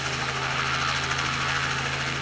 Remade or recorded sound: recorded